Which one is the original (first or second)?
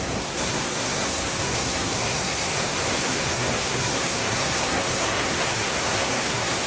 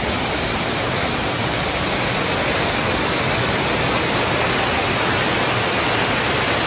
second